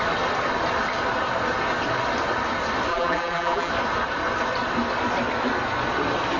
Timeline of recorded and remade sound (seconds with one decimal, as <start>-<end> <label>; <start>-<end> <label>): 0.0-2.9 recorded; 2.9-3.7 remade; 3.7-6.4 recorded